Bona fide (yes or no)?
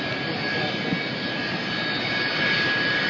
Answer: yes